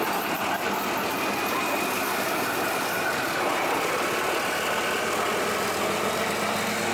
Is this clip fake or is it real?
real